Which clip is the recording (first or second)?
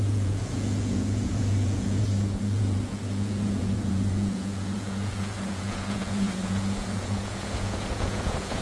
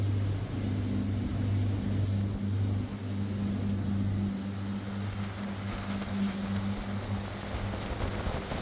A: second